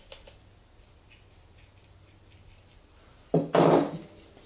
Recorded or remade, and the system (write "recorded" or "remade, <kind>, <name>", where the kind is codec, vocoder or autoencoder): recorded